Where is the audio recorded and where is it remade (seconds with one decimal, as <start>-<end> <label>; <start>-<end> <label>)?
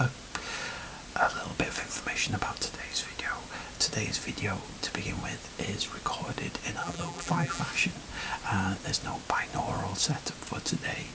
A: 0.0-6.8 recorded; 6.8-7.6 remade; 7.6-11.1 recorded